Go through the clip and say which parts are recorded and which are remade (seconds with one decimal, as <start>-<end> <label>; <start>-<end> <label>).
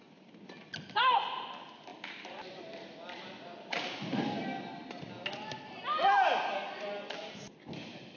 0.0-8.2 recorded